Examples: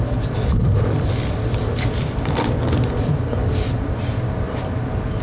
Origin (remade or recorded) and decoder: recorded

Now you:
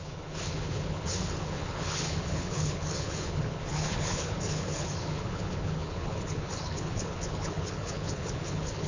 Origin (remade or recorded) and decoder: remade, codec, HILCodec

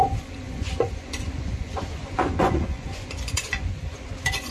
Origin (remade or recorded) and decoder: remade, vocoder, Vocos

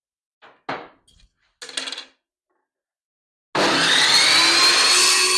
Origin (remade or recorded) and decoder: recorded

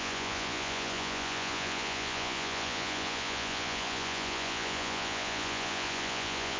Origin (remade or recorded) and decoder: remade, vocoder, Vocos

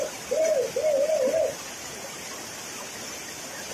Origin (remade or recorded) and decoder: recorded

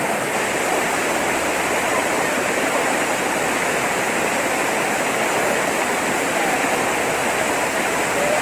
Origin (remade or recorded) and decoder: recorded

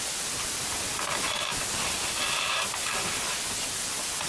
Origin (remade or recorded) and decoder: recorded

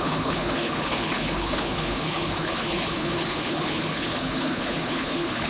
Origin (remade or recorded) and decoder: remade, codec, HILCodec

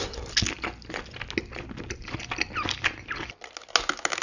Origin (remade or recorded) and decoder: recorded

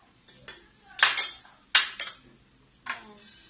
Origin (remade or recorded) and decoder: recorded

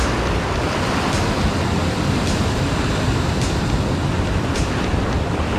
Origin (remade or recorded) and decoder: recorded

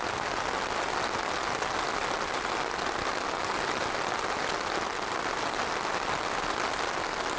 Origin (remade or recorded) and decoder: recorded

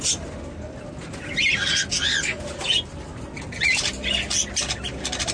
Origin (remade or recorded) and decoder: recorded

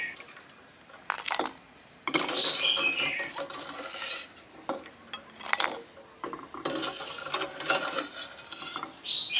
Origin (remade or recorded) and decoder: recorded